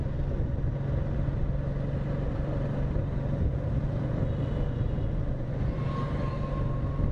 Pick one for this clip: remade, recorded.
recorded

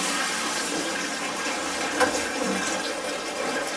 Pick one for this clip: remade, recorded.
recorded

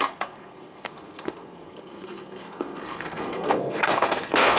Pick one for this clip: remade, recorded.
remade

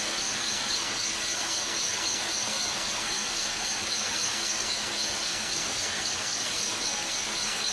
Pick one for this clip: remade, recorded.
remade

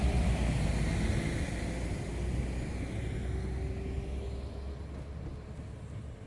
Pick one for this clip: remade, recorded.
recorded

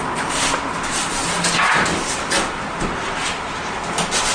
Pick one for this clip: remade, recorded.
recorded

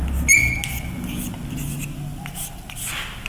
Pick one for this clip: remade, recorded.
recorded